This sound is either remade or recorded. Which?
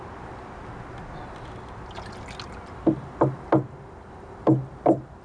recorded